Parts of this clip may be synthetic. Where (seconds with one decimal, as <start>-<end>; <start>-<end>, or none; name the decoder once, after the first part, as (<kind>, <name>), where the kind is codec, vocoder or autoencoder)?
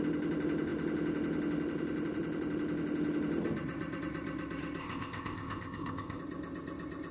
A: 4.8-6.2 (codec, ZipCodec)